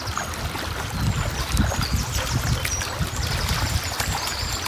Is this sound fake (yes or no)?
no